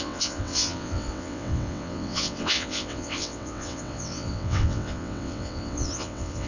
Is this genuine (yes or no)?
no